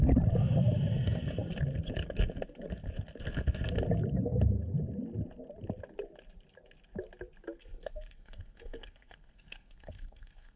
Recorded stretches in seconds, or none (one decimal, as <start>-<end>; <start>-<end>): 0.0-7.6